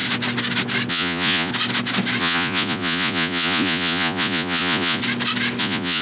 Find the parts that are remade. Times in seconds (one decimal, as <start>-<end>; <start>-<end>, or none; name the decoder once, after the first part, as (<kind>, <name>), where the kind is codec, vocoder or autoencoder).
0.9-1.5 (vocoder, Vocos); 2.2-5.0; 5.6-6.0